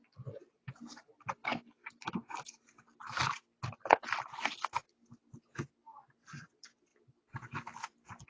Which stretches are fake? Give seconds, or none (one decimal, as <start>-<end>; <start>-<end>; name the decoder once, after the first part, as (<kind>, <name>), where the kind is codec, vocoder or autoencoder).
none